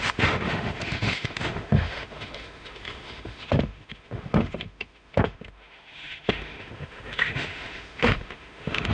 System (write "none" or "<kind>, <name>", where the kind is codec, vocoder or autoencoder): autoencoder, DAC-VAE